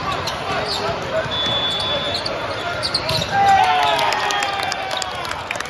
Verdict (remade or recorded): recorded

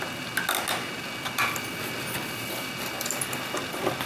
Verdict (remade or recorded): recorded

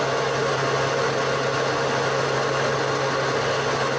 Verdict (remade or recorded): recorded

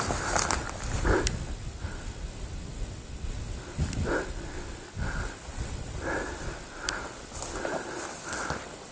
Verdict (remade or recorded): recorded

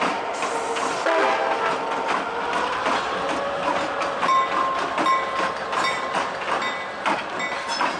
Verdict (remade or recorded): recorded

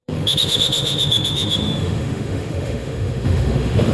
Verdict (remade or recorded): remade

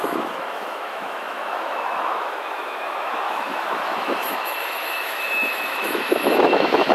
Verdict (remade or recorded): remade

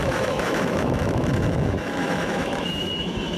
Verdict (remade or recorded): remade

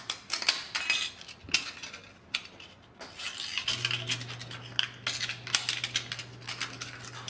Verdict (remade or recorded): recorded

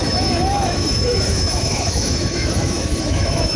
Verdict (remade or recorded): remade